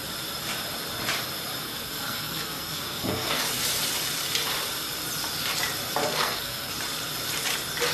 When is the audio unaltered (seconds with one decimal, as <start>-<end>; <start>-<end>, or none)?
0.0-1.6; 3.4-6.0; 6.7-7.9